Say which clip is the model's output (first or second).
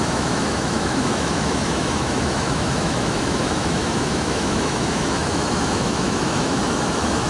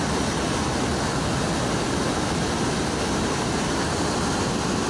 first